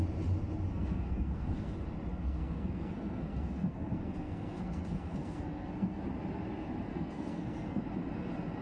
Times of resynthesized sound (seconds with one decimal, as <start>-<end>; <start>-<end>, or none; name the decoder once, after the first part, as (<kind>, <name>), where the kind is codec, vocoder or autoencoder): 0.7-1.7 (codec, SNAC); 2.1-6.0; 6.9-7.8

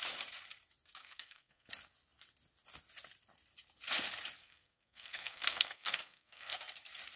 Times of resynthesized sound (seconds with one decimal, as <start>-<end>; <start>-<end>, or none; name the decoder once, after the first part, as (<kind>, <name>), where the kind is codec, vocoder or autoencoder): 1.0-1.7 (codec, SNAC); 4.4-6.7

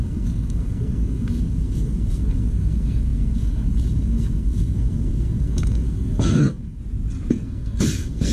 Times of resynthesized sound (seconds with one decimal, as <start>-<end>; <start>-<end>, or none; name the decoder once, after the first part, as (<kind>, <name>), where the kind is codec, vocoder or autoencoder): 0.0-6.8 (codec, SNAC); 7.3-8.3

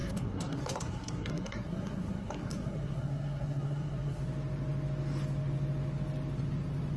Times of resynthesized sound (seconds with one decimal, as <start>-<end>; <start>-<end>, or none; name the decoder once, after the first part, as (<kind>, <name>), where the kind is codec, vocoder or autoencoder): 0.0-4.2 (codec, SNAC)

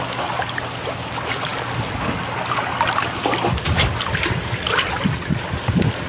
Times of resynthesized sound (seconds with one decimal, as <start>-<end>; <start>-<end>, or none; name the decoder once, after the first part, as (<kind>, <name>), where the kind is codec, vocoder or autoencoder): none

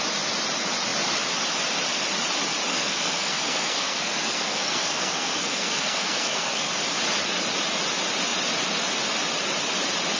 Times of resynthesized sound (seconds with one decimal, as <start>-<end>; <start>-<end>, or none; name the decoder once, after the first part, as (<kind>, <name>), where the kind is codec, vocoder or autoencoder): 2.7-6.7 (codec, SNAC)

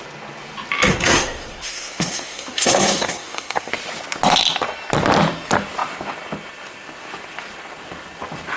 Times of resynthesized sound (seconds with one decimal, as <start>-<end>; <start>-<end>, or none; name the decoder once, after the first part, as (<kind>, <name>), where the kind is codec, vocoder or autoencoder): 0.9-3.7 (codec, SNAC)

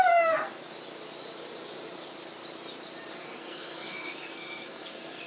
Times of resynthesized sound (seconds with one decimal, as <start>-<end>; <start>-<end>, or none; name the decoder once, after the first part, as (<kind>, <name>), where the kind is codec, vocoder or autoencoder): 0.0-0.5 (codec, SNAC); 3.1-5.3